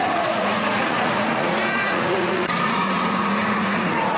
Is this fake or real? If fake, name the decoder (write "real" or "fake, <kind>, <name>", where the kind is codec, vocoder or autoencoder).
fake, vocoder, Vocos